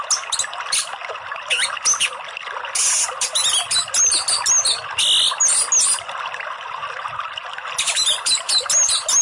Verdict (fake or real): real